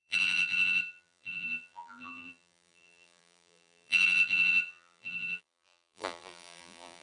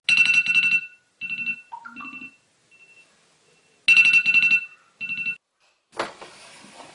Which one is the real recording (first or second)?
second